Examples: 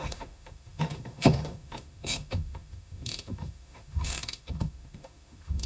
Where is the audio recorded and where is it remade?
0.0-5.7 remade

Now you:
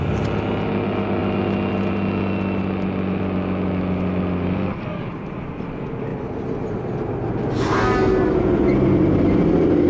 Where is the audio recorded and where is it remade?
0.0-9.9 recorded

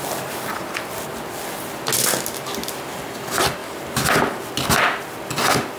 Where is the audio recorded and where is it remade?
0.0-5.8 recorded

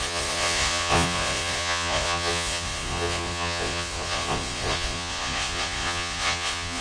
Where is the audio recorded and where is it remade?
0.0-6.8 remade